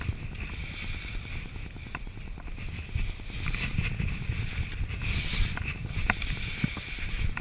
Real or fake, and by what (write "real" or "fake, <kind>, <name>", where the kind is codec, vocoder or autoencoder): real